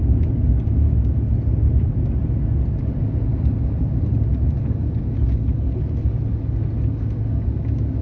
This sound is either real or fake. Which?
real